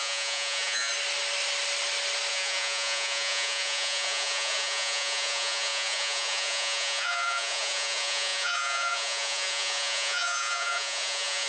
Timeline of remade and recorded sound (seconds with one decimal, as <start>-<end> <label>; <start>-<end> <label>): 0.0-0.9 remade; 0.9-2.3 recorded; 2.3-11.5 remade